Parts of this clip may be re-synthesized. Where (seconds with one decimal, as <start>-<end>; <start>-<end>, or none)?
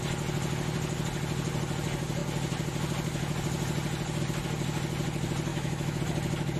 5.5-6.0